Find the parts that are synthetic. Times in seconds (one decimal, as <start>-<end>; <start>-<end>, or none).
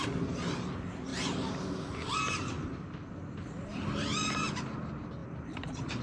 5.2-6.0